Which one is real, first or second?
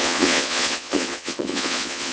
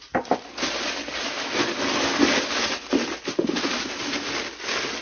second